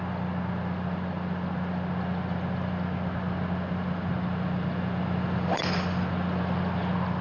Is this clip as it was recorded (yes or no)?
yes